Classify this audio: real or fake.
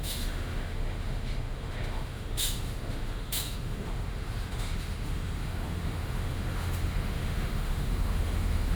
fake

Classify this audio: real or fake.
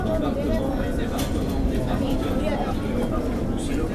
real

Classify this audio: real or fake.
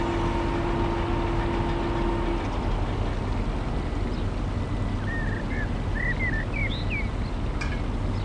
real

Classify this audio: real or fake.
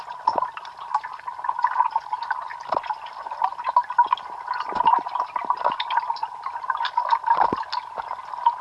real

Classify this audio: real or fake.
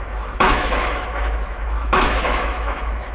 fake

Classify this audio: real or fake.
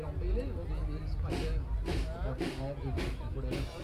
real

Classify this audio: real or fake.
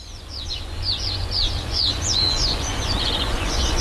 fake